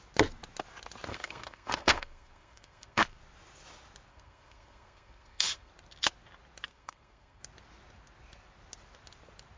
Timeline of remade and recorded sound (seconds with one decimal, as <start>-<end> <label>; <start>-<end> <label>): 0.0-1.1 recorded; 1.1-3.2 remade; 3.2-4.1 recorded; 4.1-5.7 remade; 5.7-6.7 recorded; 6.7-7.4 remade; 7.4-9.6 recorded